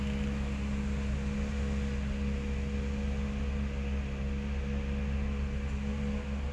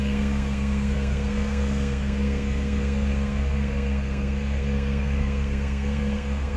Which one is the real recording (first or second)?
first